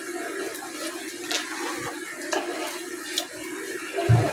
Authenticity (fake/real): real